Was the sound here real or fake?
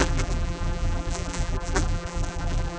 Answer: fake